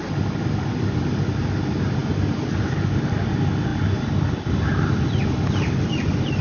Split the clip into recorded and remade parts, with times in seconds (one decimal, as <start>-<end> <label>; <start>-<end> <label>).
0.0-6.4 recorded